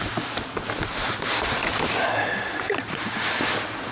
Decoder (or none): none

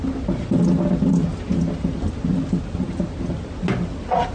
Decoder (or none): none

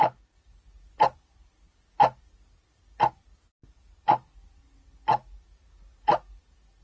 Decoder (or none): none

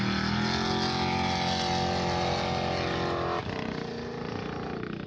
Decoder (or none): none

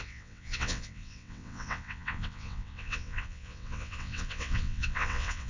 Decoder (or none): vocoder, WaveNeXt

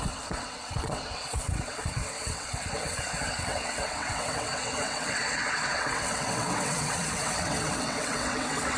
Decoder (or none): vocoder, WaveNeXt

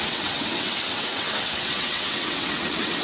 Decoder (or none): vocoder, WaveNeXt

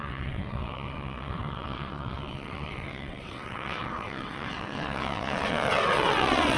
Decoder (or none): vocoder, WaveNeXt